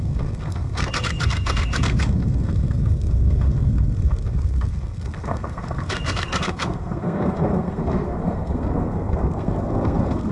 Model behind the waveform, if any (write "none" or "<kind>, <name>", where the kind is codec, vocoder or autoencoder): codec, SNAC